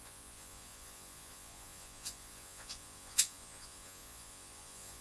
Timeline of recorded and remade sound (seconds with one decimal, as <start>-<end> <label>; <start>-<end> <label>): 0.0-5.0 remade